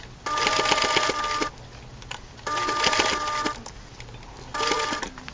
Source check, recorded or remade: recorded